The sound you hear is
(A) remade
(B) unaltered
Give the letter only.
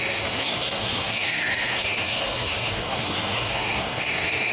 A